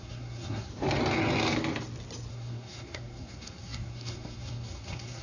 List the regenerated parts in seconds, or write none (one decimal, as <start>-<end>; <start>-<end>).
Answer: 0.0-0.7; 2.3-5.2